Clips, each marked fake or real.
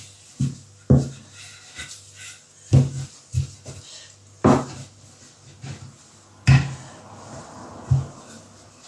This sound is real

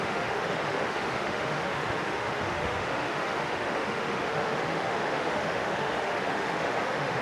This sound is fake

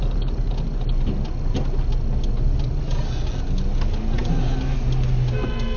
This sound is real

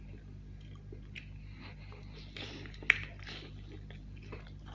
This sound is real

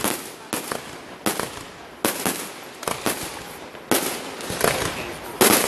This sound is real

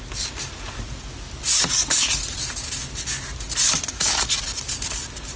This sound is real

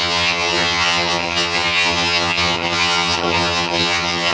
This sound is fake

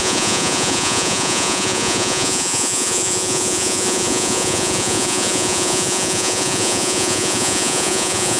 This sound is fake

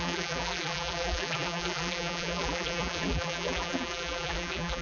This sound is fake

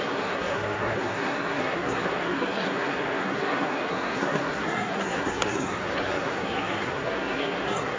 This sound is fake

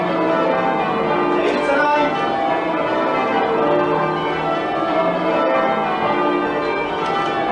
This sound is real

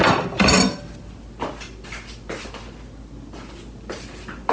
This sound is real